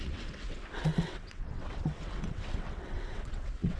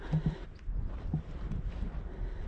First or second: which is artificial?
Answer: first